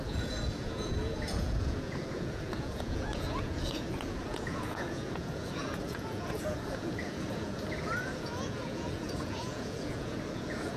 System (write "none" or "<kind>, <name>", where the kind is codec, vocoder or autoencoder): vocoder, Vocos